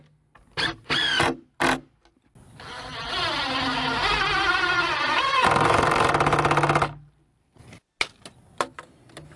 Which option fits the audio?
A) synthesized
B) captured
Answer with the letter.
B